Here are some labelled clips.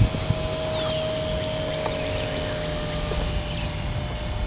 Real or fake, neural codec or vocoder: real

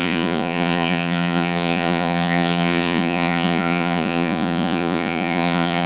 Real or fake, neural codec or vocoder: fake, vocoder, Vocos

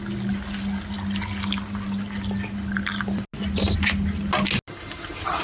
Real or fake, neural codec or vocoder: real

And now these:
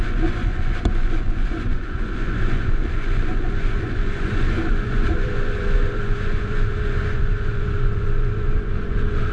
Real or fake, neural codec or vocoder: fake, vocoder, Vocos